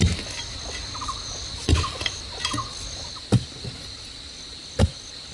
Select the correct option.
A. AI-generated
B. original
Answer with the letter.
B